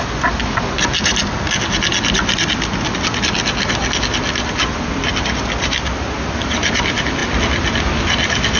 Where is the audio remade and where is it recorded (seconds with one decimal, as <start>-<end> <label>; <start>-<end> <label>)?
0.0-8.6 recorded